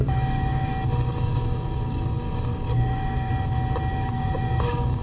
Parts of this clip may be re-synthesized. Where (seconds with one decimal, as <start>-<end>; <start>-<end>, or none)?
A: 0.0-0.7; 1.2-3.3; 3.9-5.0